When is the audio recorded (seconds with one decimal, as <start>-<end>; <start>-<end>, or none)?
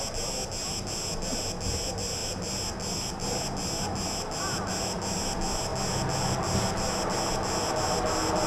0.0-8.5